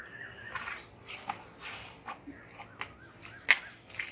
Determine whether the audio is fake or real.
real